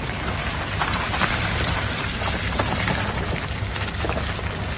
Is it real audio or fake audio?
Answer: real